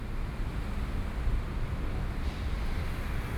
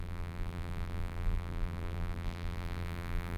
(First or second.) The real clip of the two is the first